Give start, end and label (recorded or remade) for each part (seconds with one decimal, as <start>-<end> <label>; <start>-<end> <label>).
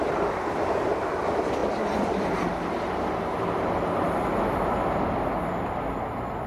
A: 0.0-1.6 recorded; 1.6-2.8 remade; 2.8-6.5 recorded